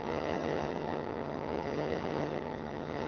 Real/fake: fake